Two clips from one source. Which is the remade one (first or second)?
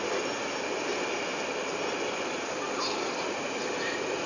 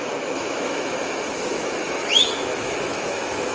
second